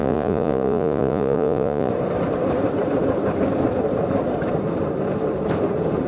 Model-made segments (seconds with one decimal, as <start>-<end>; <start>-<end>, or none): 0.0-1.9

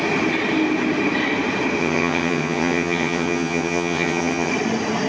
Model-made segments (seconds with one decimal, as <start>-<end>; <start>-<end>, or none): 1.8-4.5

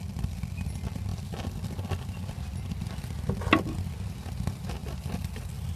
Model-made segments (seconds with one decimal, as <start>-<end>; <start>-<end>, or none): 1.1-3.2; 4.8-5.3

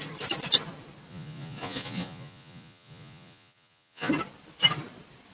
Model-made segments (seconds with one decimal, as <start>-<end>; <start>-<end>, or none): 1.1-4.1

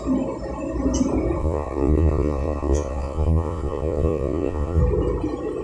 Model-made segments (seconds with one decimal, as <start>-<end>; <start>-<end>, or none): 1.4-4.8

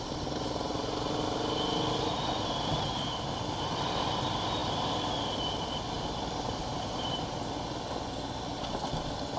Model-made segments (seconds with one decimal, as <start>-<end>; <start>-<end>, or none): 6.6-7.3